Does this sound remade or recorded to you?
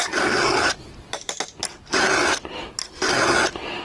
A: recorded